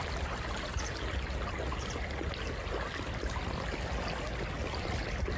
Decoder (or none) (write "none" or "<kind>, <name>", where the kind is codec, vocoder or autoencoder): none